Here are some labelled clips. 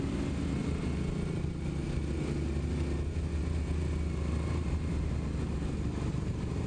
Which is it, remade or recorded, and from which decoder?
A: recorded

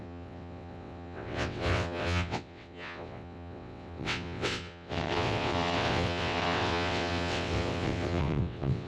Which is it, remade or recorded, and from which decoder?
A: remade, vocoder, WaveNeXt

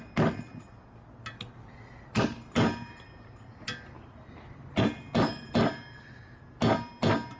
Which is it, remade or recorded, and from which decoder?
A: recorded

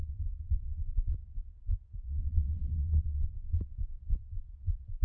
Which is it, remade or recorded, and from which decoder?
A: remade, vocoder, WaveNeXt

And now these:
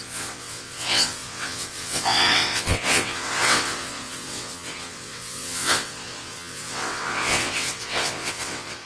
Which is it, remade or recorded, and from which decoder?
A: remade, vocoder, WaveNeXt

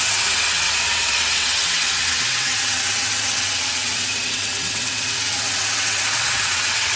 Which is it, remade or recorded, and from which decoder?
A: remade, vocoder, WaveNeXt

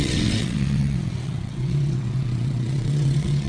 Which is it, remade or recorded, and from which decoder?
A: remade, vocoder, WaveNeXt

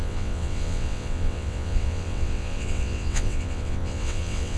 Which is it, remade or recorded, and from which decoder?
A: remade, vocoder, WaveNeXt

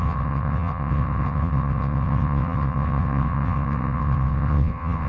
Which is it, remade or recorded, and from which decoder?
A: remade, vocoder, WaveNeXt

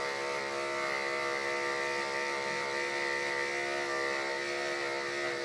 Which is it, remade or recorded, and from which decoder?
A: recorded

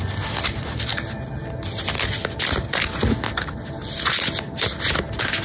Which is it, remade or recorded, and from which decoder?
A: recorded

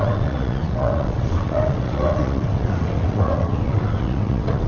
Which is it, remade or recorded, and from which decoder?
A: remade, vocoder, WaveNeXt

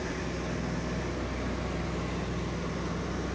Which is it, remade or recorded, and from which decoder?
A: recorded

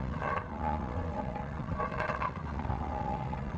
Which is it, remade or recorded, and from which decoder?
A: remade, vocoder, WaveNeXt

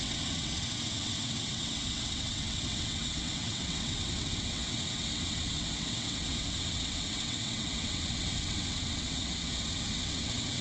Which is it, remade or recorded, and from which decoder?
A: remade, vocoder, WaveNeXt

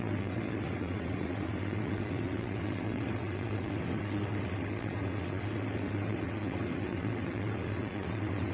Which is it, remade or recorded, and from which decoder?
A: remade, vocoder, WaveNeXt